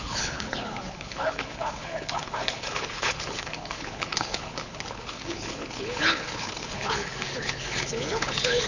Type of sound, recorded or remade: remade